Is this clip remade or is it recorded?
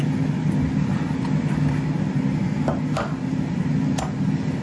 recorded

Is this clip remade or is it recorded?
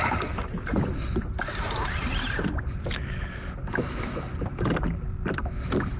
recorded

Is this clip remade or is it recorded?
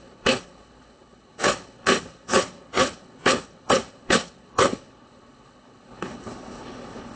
remade